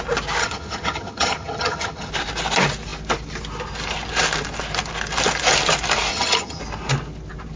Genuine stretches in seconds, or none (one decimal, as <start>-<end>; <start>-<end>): 0.0-0.4; 2.1-6.1; 6.6-7.6